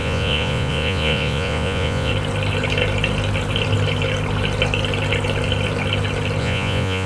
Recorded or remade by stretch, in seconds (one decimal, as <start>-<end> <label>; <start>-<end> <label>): 0.0-2.1 remade; 2.1-6.4 recorded; 6.4-7.1 remade